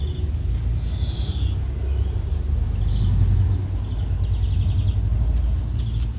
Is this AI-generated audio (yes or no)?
no